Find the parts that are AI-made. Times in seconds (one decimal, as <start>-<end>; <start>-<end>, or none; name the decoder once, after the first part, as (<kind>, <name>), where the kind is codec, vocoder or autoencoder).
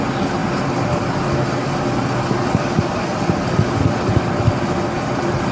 none